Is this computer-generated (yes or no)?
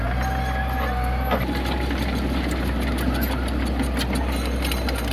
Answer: no